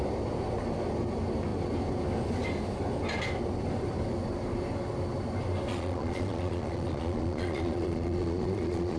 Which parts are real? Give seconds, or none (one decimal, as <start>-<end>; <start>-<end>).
0.0-5.7